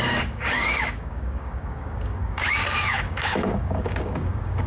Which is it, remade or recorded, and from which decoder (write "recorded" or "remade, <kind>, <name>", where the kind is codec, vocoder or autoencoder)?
remade, codec, DAC